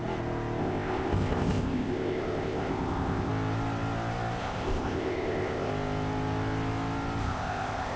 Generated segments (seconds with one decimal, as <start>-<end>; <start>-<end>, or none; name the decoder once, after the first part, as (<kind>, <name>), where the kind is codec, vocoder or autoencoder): 0.6-3.3 (codec, ZipCodec); 4.4-5.7; 7.2-8.0

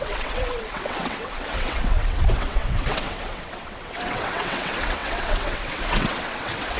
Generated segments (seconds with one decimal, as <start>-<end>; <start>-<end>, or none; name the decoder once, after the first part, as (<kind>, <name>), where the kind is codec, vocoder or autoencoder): 0.0-6.8 (vocoder, WaveNeXt)